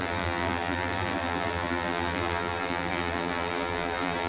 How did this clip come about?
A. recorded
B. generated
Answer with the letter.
B